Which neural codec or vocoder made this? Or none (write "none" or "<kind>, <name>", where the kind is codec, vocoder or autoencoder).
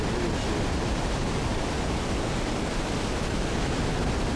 none